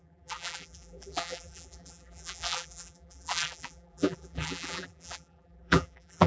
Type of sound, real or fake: fake